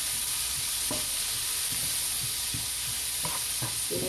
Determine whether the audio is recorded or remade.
recorded